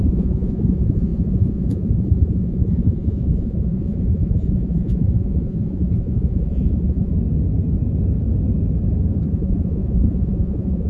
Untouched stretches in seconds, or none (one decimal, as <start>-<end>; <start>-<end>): 7.1-9.3